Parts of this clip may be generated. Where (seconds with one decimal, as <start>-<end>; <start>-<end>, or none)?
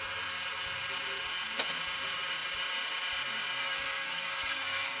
3.6-5.0